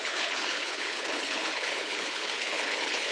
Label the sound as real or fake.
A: fake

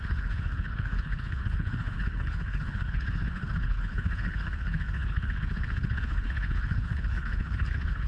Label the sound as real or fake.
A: fake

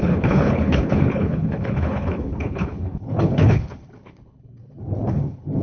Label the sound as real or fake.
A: fake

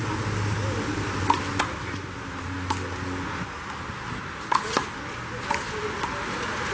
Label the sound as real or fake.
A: real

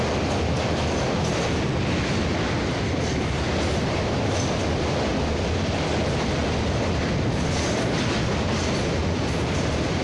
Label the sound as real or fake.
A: real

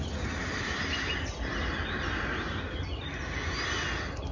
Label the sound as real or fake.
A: real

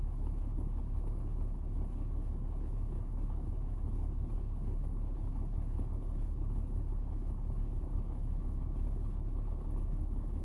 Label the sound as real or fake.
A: fake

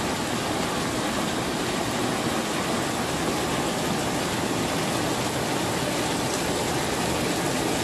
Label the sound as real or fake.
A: real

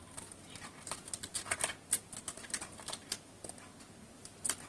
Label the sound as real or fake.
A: real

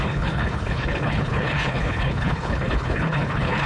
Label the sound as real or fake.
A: fake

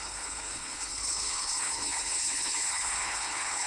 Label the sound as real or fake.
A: fake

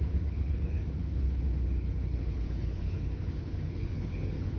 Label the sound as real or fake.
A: fake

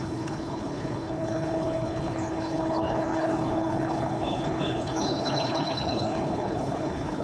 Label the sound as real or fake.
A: fake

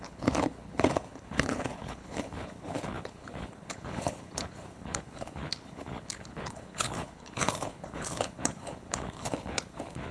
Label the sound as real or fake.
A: fake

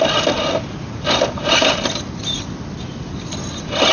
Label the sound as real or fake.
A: real